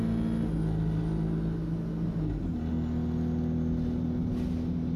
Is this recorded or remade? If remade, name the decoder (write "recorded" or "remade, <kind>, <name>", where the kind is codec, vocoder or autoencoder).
recorded